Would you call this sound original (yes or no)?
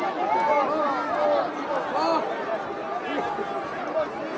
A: yes